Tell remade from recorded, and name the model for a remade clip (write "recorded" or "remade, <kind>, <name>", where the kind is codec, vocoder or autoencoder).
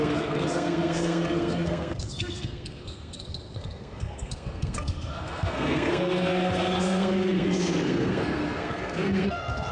remade, codec, SNAC